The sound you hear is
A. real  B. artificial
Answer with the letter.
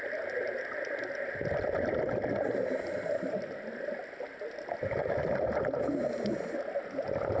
A